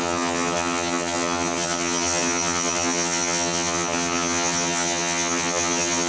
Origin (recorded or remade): remade